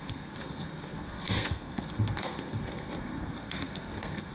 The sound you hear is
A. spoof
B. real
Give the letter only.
A